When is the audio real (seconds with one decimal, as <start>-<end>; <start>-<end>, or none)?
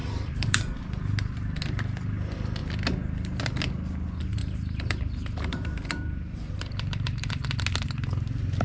0.8-4.4; 7.3-8.6